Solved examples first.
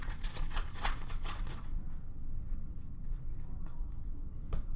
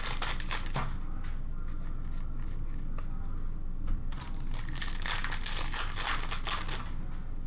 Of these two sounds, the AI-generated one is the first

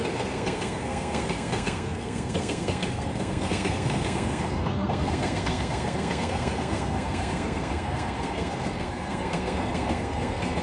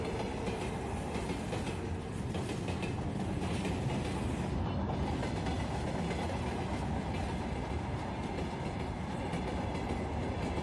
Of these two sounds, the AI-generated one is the first